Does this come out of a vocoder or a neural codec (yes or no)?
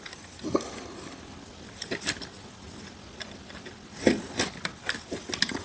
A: no